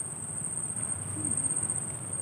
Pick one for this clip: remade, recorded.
remade